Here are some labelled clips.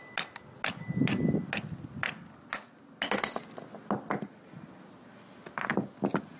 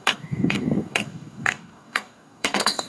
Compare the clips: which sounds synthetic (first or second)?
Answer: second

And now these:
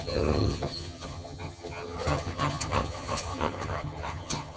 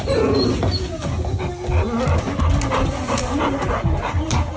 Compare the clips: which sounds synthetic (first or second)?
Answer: first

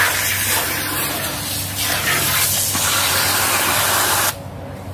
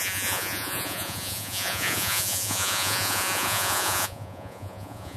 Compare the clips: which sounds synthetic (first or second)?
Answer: second